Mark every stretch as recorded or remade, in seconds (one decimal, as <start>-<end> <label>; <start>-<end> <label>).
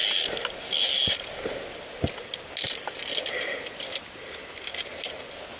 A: 0.0-5.6 recorded